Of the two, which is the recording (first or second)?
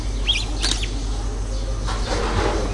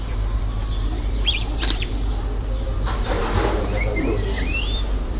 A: first